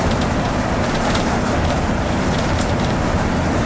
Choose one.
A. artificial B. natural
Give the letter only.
A